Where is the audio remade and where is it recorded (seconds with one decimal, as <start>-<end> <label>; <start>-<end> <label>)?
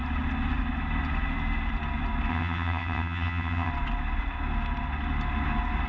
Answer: 0.0-2.3 recorded; 2.3-3.7 remade; 3.7-5.9 recorded